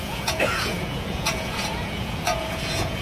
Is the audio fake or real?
fake